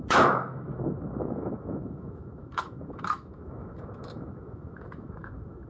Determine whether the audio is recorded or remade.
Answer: remade